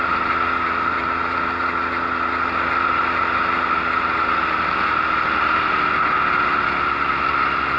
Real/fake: real